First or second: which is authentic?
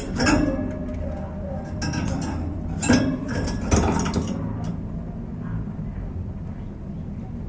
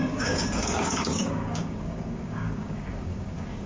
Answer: first